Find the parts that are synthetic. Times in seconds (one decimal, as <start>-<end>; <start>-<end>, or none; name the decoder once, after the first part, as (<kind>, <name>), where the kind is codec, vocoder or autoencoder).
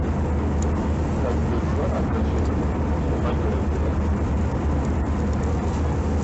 none